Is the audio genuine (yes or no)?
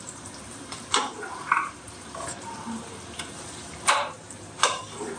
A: no